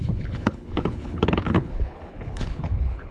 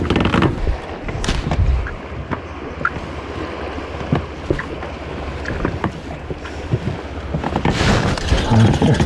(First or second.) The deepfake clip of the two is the first